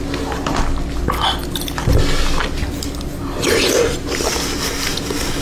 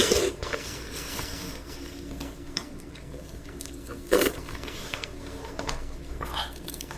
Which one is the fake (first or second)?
second